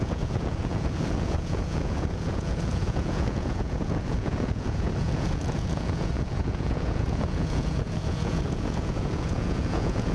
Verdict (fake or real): fake